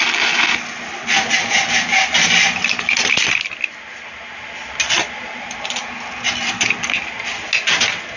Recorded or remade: recorded